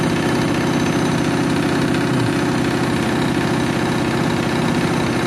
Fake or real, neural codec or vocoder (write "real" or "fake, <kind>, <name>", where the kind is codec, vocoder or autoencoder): real